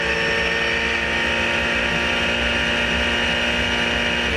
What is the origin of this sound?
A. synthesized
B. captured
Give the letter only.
B